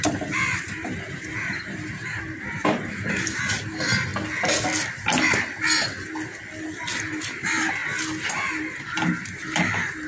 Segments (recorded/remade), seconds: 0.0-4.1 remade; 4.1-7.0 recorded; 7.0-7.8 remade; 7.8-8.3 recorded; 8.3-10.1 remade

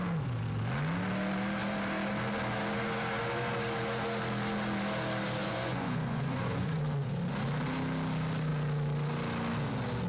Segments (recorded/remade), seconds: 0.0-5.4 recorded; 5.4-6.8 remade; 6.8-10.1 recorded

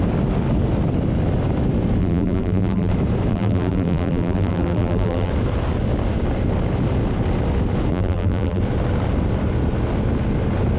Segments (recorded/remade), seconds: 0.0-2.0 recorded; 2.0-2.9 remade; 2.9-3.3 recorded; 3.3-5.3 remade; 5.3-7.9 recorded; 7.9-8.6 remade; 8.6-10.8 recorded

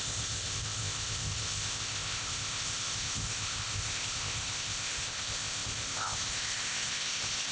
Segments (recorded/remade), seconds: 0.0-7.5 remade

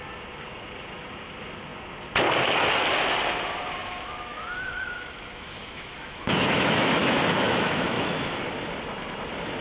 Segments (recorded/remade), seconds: 0.0-3.8 recorded; 3.8-8.4 remade; 8.4-9.6 recorded